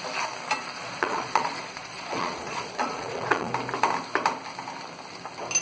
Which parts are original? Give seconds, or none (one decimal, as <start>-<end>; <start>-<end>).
0.0-0.7; 3.5-5.6